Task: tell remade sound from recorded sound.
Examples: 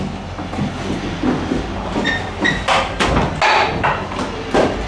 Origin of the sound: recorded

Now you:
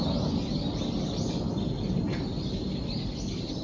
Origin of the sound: recorded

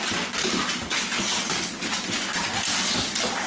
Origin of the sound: recorded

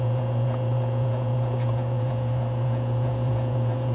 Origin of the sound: remade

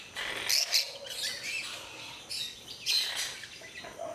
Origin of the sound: recorded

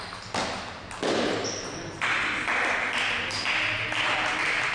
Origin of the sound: recorded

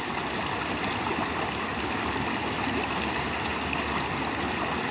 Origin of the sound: recorded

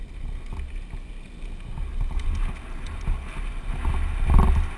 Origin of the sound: recorded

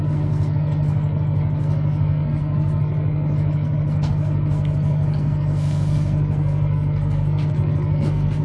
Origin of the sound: remade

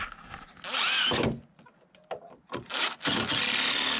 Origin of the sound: recorded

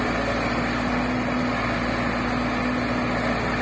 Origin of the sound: recorded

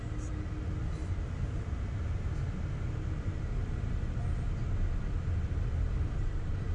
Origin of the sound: recorded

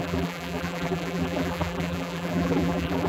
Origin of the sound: remade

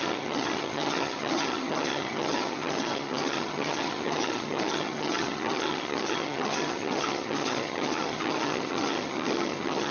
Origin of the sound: remade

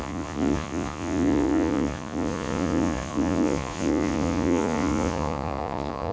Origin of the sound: remade